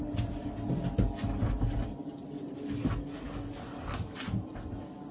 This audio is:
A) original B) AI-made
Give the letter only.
A